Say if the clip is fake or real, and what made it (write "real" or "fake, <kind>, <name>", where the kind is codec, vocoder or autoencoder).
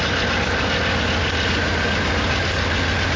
real